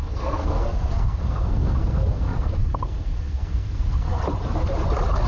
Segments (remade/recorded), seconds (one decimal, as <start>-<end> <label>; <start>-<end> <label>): 0.0-4.2 remade; 4.2-5.3 recorded